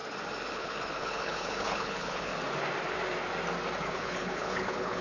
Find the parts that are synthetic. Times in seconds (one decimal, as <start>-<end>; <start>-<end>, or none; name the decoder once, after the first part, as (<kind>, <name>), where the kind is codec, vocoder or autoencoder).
0.5-2.3 (codec, HILCodec); 3.8-5.0